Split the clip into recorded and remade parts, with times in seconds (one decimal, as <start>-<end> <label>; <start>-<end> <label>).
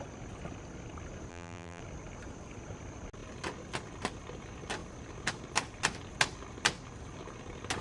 0.0-1.3 recorded; 1.3-1.8 remade; 1.8-7.8 recorded